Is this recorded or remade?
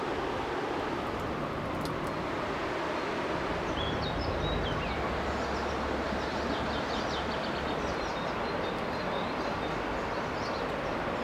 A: recorded